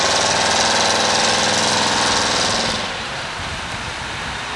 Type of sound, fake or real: real